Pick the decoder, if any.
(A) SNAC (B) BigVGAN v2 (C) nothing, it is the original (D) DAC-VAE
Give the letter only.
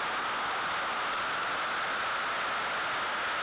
C